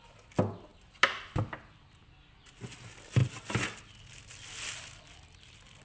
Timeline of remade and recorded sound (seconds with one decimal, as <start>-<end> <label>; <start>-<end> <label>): 0.0-5.8 recorded